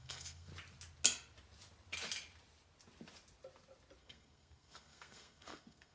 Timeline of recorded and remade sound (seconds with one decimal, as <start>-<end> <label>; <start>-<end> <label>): 0.0-0.5 remade; 0.5-4.0 recorded; 4.0-5.9 remade